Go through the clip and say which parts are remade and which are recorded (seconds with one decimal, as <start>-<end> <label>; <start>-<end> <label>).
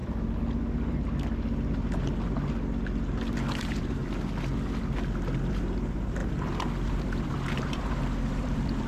0.0-3.6 recorded; 3.6-4.0 remade; 4.0-5.5 recorded; 5.5-6.2 remade; 6.2-6.9 recorded; 6.9-8.9 remade